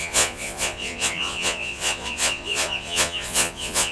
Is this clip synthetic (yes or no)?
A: yes